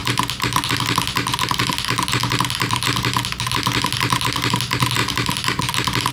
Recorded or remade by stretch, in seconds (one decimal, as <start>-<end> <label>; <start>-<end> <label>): 0.0-6.1 recorded

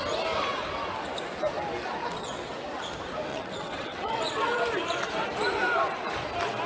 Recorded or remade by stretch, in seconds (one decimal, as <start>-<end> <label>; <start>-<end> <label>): 0.0-2.0 recorded; 2.0-2.5 remade; 2.5-3.3 recorded; 3.3-4.6 remade; 4.6-6.7 recorded

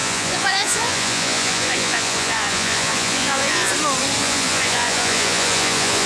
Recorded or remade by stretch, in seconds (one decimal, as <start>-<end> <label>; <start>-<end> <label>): 0.0-3.7 remade; 3.7-4.2 recorded; 4.2-6.1 remade

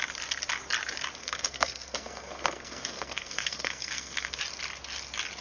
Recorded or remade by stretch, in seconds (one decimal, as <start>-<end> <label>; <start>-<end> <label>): 0.0-1.2 recorded; 1.2-4.4 remade; 4.4-5.4 recorded

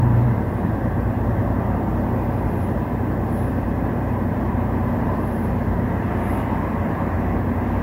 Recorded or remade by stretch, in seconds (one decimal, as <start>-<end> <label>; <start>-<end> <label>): 0.0-1.4 remade; 1.4-3.0 recorded; 3.0-7.8 remade